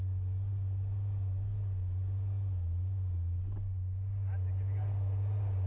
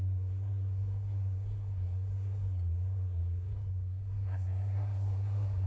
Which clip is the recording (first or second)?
first